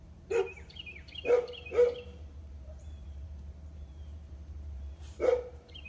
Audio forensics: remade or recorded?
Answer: remade